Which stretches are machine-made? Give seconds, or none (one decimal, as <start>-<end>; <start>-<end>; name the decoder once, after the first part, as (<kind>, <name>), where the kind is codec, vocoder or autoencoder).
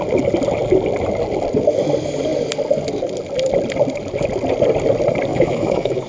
5.3-6.1 (autoencoder, DAC-VAE)